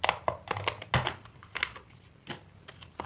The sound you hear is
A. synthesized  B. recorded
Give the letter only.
B